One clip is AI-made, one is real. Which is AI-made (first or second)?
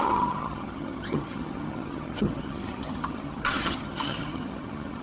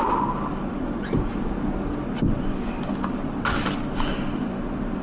first